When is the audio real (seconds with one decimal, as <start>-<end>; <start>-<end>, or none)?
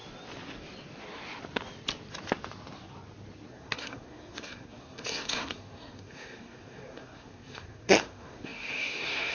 0.0-3.5